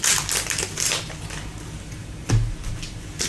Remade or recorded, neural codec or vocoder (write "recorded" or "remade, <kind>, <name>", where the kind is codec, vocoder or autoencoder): recorded